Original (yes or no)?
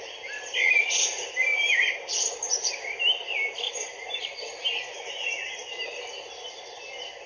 yes